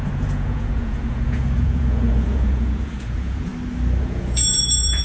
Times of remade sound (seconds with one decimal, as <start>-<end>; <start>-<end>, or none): 0.0-3.5; 4.0-5.0